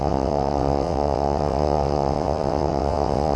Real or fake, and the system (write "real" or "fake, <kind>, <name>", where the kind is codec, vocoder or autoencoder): fake, vocoder, WaveNeXt